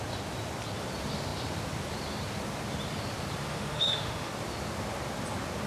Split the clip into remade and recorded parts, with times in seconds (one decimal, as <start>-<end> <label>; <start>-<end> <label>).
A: 0.0-3.5 recorded; 3.5-4.3 remade; 4.3-5.7 recorded